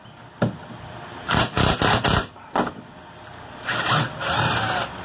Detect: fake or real real